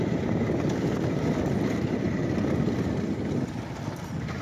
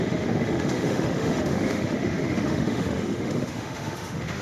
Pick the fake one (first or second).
second